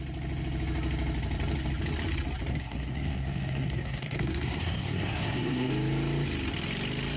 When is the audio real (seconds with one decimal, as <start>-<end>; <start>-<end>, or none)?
0.0-2.5; 5.7-7.2